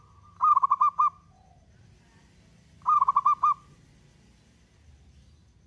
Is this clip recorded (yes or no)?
yes